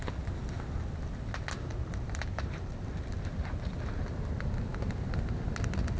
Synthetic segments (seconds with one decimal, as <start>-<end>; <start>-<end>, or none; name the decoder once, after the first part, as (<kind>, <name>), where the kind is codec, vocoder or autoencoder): 1.7-2.9 (vocoder, BigVGAN v2)